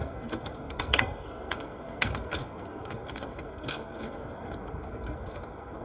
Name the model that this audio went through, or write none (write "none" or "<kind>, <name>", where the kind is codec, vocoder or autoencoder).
codec, SNAC